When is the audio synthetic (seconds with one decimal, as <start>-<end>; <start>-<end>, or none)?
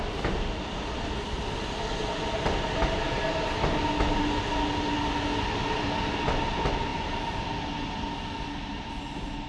none